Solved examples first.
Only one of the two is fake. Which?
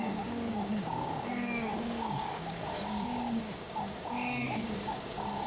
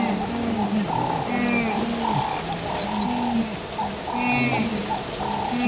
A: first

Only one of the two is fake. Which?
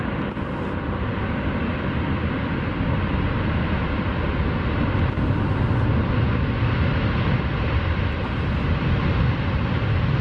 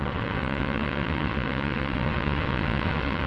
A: second